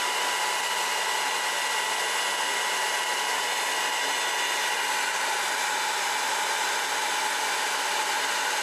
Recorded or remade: recorded